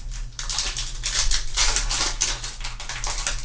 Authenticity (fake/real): real